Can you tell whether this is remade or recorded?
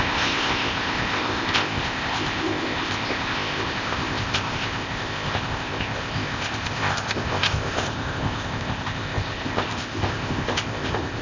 remade